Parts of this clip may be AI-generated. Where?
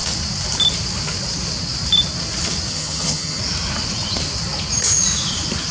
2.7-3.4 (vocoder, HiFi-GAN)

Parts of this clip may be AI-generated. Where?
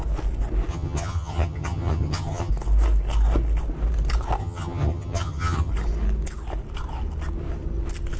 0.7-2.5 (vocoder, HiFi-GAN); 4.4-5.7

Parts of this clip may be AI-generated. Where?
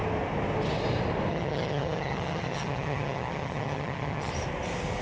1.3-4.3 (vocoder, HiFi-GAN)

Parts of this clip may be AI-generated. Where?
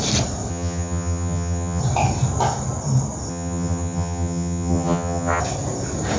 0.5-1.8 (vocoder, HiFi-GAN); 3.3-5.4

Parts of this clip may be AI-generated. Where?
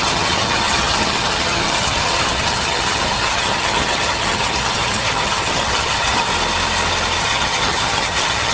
0.0-6.3 (vocoder, HiFi-GAN); 7.2-8.5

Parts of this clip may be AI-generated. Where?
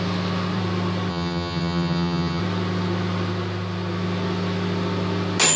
1.1-2.4 (vocoder, HiFi-GAN)